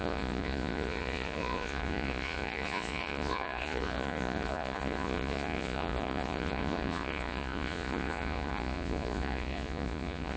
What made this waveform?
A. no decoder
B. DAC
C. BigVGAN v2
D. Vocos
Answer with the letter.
D